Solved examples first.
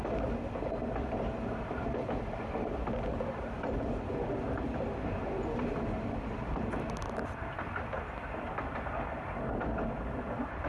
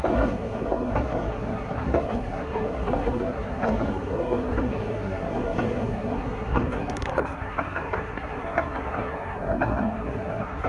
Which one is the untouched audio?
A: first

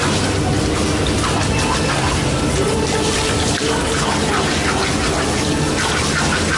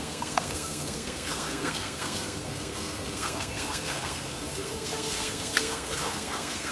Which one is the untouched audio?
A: first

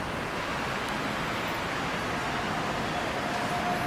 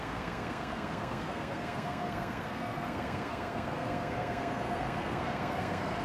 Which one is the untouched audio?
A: first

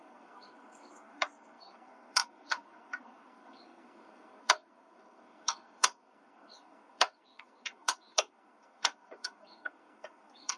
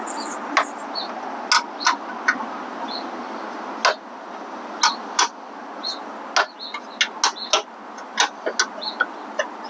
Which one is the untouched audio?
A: second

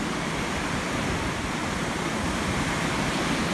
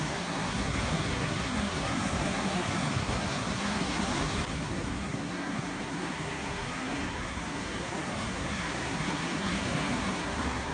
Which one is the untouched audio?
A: first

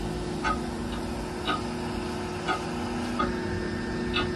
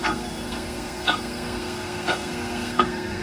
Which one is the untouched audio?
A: first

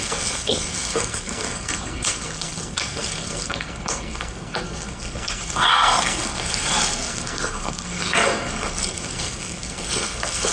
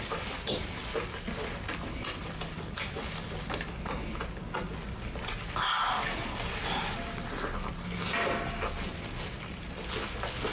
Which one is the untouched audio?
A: second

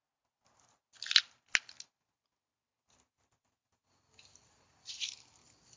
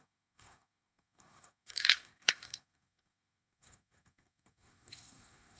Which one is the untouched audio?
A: first